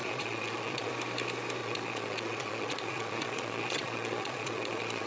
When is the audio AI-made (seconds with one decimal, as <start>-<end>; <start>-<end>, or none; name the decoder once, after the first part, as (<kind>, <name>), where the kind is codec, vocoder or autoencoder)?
0.0-0.9 (vocoder, Vocos); 1.6-5.1